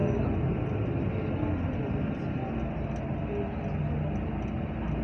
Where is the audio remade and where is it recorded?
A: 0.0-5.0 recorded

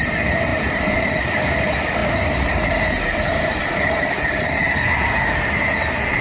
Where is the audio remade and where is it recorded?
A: 0.0-0.5 recorded; 0.5-1.3 remade; 1.3-2.0 recorded; 2.0-5.1 remade; 5.1-6.2 recorded

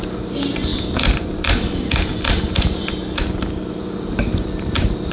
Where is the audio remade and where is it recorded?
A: 0.0-5.1 recorded

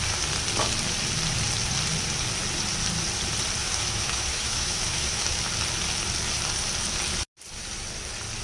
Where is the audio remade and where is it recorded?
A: 0.0-3.6 recorded; 3.6-5.4 remade; 5.4-8.4 recorded